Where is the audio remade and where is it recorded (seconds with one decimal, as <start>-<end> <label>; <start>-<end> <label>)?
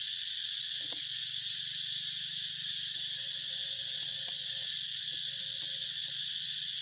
0.0-1.2 remade; 1.2-3.2 recorded; 3.2-6.8 remade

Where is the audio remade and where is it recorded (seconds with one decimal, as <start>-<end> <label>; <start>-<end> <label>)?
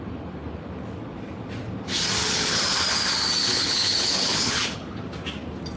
0.0-2.2 recorded; 2.2-2.8 remade; 2.8-3.4 recorded; 3.4-5.0 remade; 5.0-5.8 recorded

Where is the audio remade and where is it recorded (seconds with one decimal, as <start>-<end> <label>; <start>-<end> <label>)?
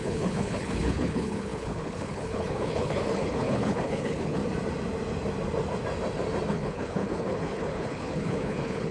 0.0-4.4 remade; 4.4-6.5 recorded; 6.5-8.9 remade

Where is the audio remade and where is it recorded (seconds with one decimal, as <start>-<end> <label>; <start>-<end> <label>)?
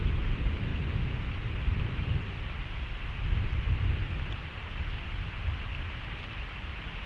0.0-7.1 recorded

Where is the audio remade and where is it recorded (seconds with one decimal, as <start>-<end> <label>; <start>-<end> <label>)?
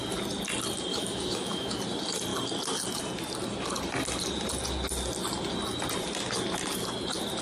0.0-0.9 recorded; 0.9-1.8 remade; 1.8-7.4 recorded